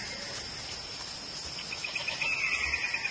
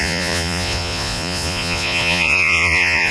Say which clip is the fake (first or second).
second